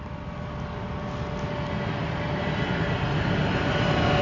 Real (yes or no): yes